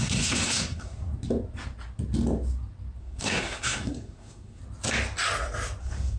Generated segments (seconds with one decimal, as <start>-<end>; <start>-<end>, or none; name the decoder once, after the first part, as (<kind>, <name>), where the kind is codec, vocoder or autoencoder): 0.0-1.1 (codec, SNAC); 3.0-4.6; 5.8-6.2